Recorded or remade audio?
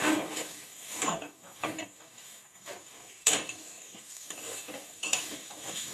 remade